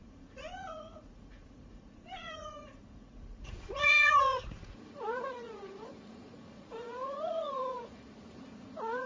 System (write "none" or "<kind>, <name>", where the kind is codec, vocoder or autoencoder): vocoder, Vocos